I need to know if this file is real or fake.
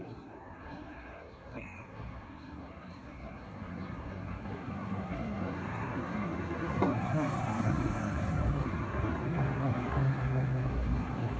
fake